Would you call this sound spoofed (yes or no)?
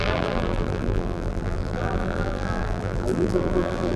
yes